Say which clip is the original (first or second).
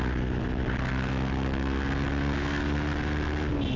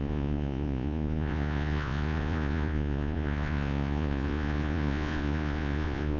first